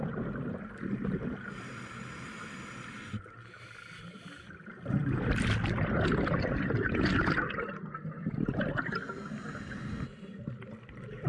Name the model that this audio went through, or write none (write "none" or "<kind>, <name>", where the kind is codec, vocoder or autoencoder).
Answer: none